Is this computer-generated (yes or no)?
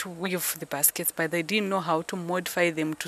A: no